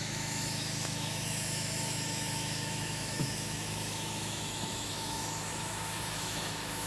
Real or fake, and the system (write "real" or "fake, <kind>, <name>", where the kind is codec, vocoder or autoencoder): fake, autoencoder, DAC-VAE